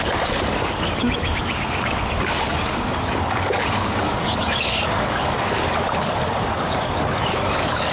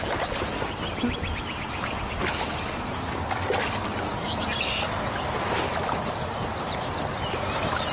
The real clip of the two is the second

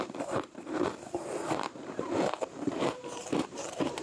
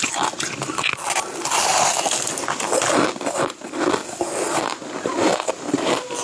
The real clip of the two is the second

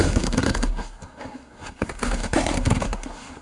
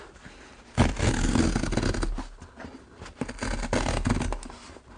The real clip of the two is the second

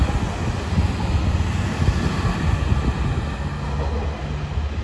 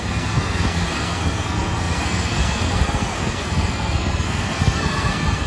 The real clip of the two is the first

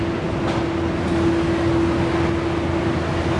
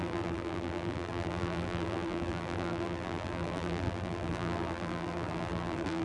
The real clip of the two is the first